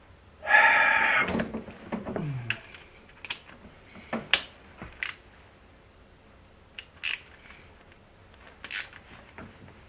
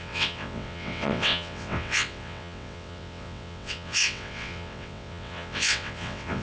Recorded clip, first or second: first